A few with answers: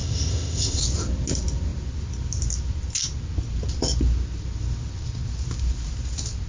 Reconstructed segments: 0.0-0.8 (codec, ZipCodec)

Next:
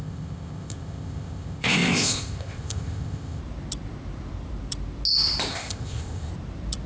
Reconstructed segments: 0.0-3.4 (codec, ZipCodec); 5.5-6.3

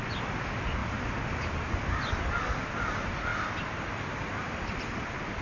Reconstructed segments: none